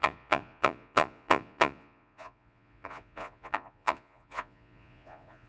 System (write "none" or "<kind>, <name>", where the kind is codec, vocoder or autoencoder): vocoder, Vocos